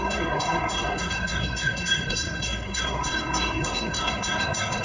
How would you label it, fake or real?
fake